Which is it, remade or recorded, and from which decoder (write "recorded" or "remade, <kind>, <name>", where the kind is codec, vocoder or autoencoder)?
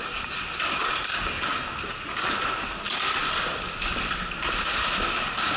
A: recorded